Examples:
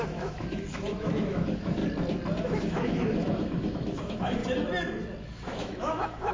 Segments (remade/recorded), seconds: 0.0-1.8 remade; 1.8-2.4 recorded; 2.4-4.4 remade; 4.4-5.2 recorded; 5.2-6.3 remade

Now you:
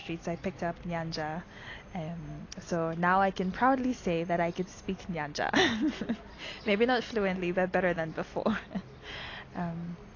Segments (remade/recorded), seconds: 0.0-10.2 recorded

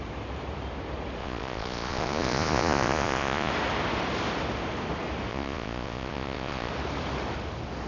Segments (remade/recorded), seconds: 0.0-1.2 recorded; 1.2-3.5 remade; 3.5-5.3 recorded; 5.3-6.7 remade; 6.7-7.9 recorded

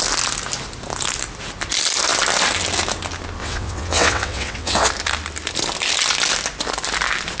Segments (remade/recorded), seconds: 0.0-3.4 recorded; 3.4-4.9 remade; 4.9-7.4 recorded